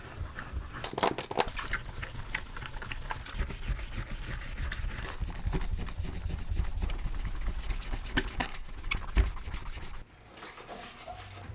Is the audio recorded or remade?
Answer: recorded